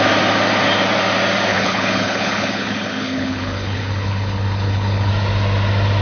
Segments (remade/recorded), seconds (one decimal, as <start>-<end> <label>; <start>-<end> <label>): 0.0-1.5 recorded; 1.5-5.1 remade; 5.1-6.0 recorded